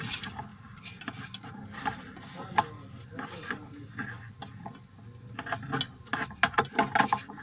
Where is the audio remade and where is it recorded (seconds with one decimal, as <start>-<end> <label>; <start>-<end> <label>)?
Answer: 0.0-7.4 recorded